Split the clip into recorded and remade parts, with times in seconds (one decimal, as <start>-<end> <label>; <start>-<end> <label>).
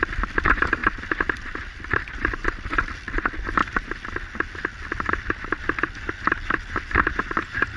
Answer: 0.0-3.6 remade; 3.6-5.6 recorded; 5.6-7.8 remade